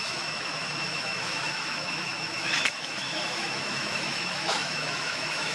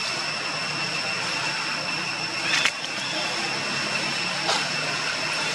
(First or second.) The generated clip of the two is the first